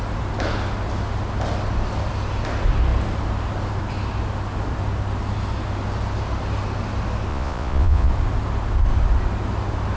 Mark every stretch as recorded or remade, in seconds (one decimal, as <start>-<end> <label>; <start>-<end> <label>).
0.0-7.3 recorded; 7.3-8.1 remade; 8.1-10.0 recorded